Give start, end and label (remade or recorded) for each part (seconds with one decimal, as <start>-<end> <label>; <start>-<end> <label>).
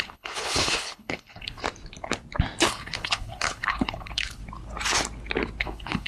0.0-1.6 remade; 1.6-2.6 recorded; 2.6-4.4 remade; 4.4-5.6 recorded; 5.6-6.1 remade